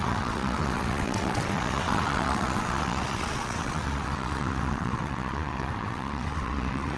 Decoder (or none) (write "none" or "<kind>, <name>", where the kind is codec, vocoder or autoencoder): vocoder, WaveNeXt